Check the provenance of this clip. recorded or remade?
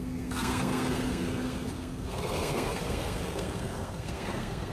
remade